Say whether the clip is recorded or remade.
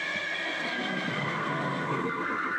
remade